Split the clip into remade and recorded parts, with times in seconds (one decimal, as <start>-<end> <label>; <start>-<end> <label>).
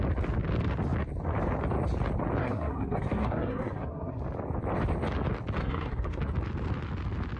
0.0-2.4 recorded; 2.4-4.2 remade; 4.2-5.6 recorded; 5.6-6.2 remade; 6.2-7.4 recorded